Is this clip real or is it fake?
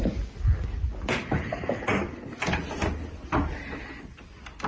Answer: real